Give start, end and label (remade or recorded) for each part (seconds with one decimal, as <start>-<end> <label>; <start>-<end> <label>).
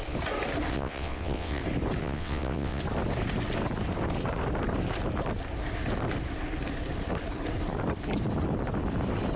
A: 0.0-0.7 recorded; 0.7-1.6 remade; 1.6-2.0 recorded; 2.0-2.8 remade; 2.8-9.4 recorded